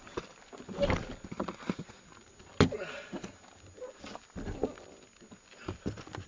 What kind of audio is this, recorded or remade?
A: recorded